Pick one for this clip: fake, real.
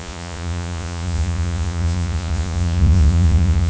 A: fake